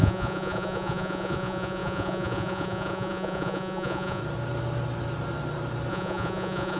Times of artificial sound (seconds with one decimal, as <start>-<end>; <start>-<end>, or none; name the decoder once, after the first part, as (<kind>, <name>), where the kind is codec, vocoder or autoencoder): 0.0-4.2 (vocoder, Vocos); 5.9-6.8